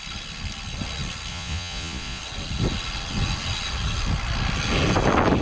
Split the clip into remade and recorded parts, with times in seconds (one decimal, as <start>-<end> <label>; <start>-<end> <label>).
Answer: 0.0-1.3 recorded; 1.3-2.2 remade; 2.2-5.4 recorded